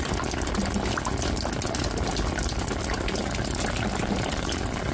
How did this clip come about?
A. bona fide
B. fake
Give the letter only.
A